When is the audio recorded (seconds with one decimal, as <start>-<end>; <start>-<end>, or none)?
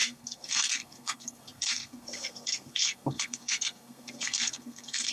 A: none